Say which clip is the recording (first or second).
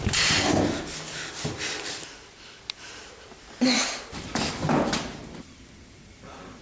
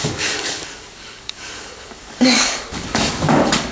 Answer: first